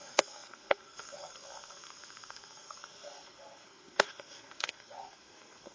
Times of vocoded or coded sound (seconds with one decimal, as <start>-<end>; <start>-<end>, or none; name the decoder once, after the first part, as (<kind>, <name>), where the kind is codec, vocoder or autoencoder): 0.0-5.7 (codec, SNAC)